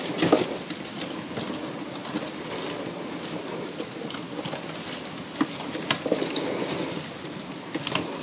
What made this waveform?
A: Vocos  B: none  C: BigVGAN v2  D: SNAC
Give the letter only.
B